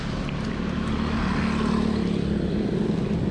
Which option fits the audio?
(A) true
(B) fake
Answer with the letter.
A